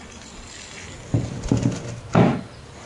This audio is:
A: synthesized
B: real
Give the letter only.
B